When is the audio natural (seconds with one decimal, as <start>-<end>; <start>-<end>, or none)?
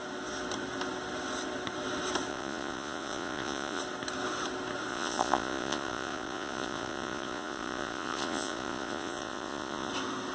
0.0-2.3; 3.8-4.9; 9.9-10.3